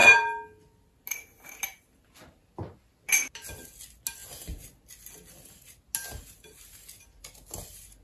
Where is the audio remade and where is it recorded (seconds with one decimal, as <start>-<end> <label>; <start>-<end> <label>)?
0.0-8.0 recorded